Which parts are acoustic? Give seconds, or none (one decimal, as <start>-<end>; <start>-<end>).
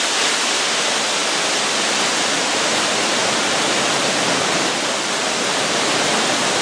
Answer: 0.0-6.6